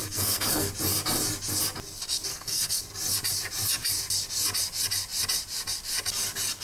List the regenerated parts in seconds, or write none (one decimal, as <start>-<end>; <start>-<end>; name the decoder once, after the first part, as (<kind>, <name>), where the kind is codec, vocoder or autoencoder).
0.0-0.7 (codec, SNAC); 2.3-2.8